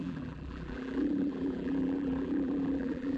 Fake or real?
fake